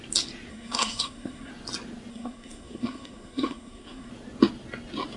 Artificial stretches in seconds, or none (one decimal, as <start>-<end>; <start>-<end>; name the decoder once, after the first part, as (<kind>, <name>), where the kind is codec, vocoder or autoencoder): 0.5-1.5 (codec, SNAC); 2.1-4.1